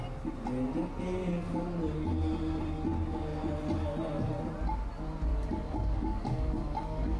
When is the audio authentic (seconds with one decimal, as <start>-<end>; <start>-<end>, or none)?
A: 0.0-5.3